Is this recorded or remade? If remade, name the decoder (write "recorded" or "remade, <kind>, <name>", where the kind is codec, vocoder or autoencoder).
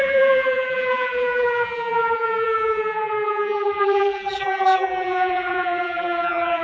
remade, vocoder, BigVGAN v2